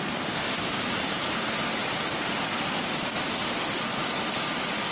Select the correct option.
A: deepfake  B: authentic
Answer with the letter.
B